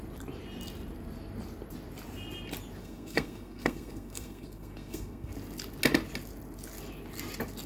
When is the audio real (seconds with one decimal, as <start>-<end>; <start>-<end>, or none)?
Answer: 0.0-2.8; 5.3-7.7